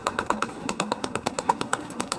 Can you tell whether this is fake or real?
fake